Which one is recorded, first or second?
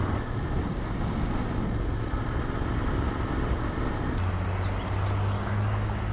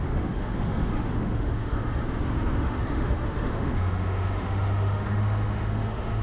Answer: first